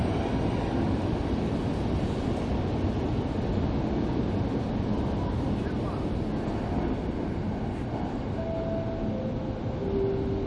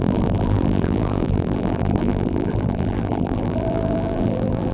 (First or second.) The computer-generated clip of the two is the second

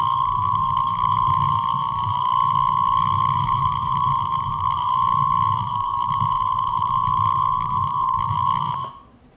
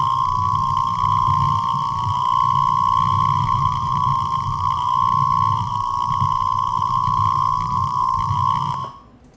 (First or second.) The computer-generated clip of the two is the first